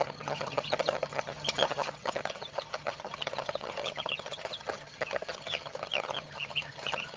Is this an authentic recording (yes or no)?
no